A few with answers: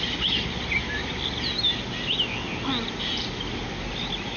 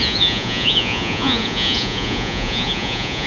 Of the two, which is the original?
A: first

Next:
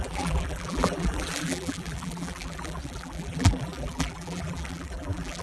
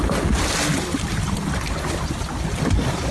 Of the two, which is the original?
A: second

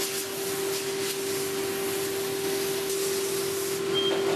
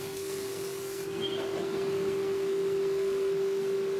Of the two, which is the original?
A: first